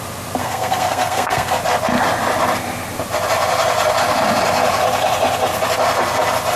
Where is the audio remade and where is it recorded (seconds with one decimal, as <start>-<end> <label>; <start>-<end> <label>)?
0.0-0.4 recorded; 0.4-1.5 remade; 1.5-6.6 recorded